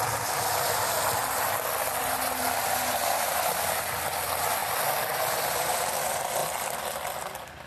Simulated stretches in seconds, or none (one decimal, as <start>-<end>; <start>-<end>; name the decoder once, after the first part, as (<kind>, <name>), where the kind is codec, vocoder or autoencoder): none